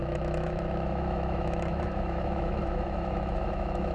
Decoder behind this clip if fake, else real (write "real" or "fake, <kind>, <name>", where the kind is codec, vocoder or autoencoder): fake, autoencoder, DAC-VAE